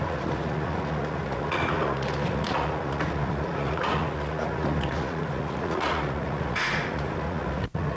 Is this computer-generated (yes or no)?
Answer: yes